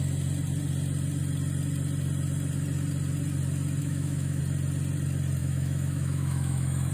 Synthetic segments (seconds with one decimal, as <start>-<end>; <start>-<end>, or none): 3.8-4.4; 5.4-6.9